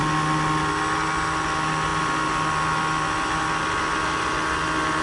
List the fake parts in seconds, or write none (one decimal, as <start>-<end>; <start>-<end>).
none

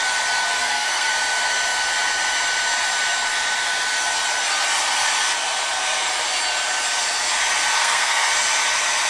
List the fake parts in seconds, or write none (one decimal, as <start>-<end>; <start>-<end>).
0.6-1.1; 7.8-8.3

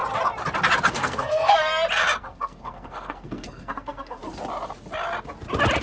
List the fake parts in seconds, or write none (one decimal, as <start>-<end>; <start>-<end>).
0.9-1.6; 2.2-4.2

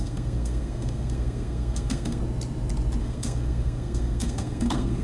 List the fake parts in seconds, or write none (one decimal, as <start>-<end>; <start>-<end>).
0.0-2.2; 3.0-5.0